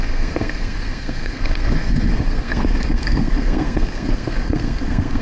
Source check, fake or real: fake